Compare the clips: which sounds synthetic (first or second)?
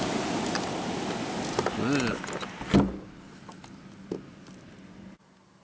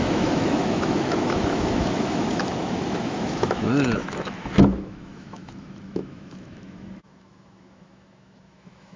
second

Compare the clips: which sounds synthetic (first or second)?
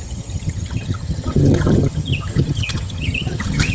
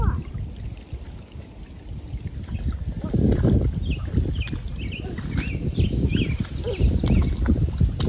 first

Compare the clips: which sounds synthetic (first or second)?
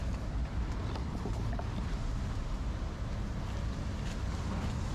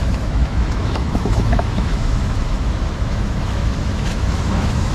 second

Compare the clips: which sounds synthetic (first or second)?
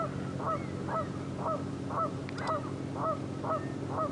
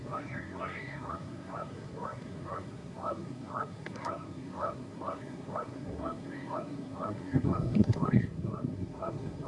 second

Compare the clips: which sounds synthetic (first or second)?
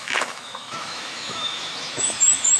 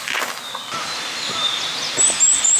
first